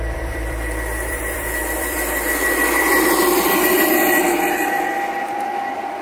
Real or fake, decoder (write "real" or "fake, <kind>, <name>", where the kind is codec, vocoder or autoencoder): fake, vocoder, BigVGAN v2